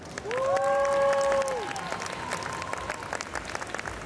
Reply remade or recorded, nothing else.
recorded